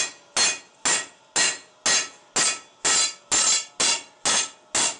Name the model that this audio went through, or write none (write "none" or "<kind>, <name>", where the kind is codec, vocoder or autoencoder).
none